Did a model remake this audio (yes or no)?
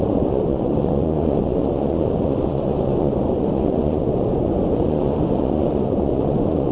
yes